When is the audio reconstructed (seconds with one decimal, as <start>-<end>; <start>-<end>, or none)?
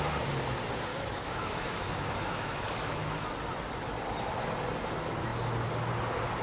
0.9-3.3